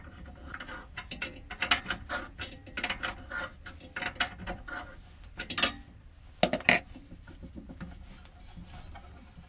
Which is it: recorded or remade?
recorded